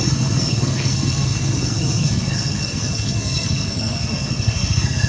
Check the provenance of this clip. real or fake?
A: fake